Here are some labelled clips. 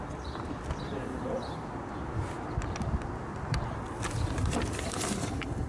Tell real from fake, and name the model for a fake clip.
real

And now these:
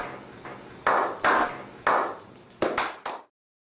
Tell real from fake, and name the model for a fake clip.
real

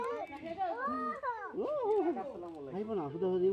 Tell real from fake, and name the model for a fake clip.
real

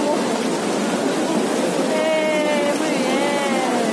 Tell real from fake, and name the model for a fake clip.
real